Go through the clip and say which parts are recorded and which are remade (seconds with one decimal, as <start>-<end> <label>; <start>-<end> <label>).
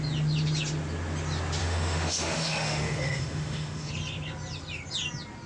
0.0-1.6 recorded; 1.6-3.9 remade; 3.9-5.5 recorded